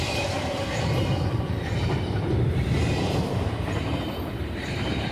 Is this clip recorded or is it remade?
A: remade